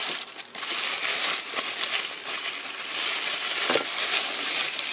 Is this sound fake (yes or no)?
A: no